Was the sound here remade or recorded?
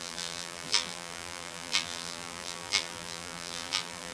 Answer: remade